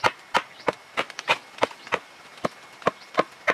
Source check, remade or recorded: recorded